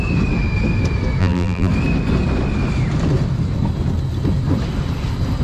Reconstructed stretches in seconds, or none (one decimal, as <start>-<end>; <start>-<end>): 1.2-1.7